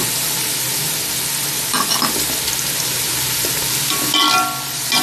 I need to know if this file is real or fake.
real